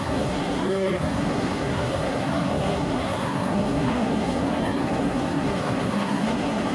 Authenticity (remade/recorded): remade